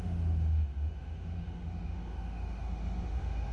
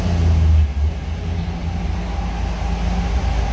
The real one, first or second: second